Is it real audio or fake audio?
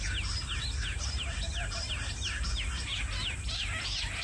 real